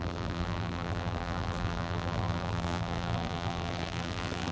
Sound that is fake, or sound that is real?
fake